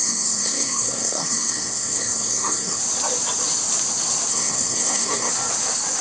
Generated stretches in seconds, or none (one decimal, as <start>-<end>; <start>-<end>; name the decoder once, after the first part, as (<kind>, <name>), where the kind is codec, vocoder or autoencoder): 0.0-2.8 (codec, SNAC); 4.3-5.3